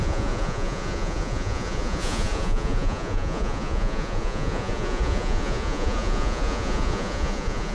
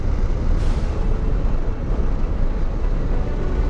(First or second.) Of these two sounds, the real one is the second